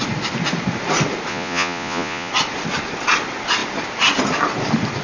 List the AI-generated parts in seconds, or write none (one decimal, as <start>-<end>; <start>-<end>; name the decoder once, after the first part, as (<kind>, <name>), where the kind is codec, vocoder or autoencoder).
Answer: 1.3-2.3 (vocoder, Vocos)